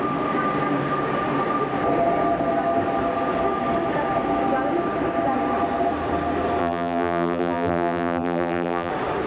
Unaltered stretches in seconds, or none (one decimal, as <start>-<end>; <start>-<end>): 0.0-6.6; 8.9-9.3